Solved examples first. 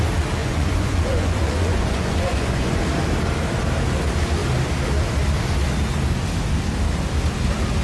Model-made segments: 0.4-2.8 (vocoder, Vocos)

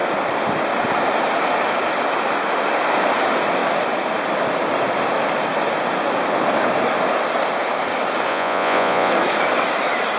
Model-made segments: 8.3-9.1 (vocoder, Vocos)

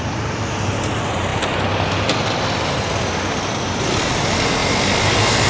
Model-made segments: none

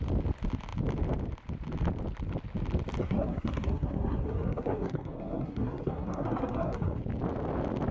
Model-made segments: 3.0-7.0 (codec, SNAC)

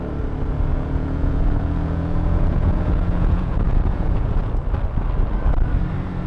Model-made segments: 0.7-4.5 (vocoder, Vocos)

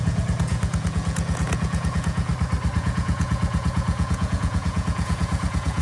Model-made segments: 0.0-2.3 (vocoder, Vocos); 2.8-5.8

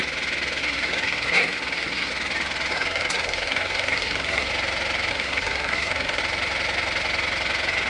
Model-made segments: 0.6-2.1 (codec, SNAC); 2.7-4.5; 5.1-6.2